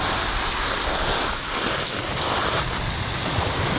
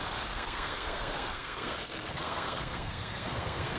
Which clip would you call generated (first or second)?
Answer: second